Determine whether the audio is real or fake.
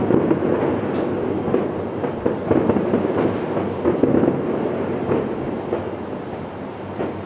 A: real